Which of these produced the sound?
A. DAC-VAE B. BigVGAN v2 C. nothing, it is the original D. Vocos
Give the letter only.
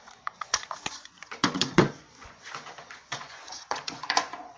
D